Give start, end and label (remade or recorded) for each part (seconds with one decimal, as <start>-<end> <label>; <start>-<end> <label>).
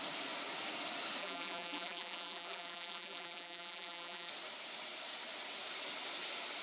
0.0-1.2 recorded; 1.2-4.3 remade; 4.3-6.6 recorded